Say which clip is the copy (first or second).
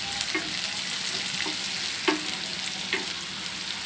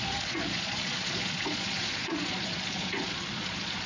second